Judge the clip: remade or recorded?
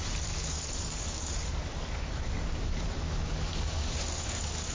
remade